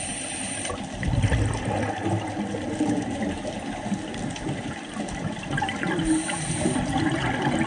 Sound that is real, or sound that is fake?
real